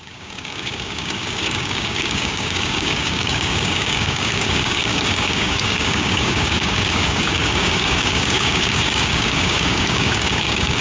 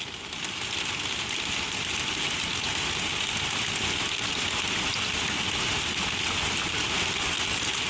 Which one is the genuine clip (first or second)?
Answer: second